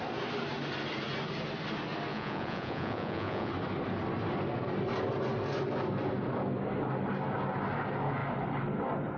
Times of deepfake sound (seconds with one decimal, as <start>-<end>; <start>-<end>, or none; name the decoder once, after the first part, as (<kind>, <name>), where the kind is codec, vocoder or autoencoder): 2.1-3.5 (vocoder, Vocos)

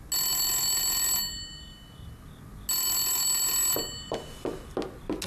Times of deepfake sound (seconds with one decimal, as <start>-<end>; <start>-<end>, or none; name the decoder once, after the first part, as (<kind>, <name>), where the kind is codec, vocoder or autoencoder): none